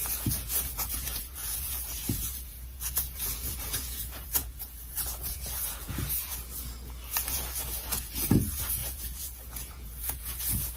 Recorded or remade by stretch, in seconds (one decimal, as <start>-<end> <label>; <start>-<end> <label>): 0.0-6.3 remade; 6.3-7.3 recorded; 7.3-10.8 remade